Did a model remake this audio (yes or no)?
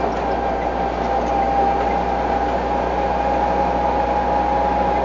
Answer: no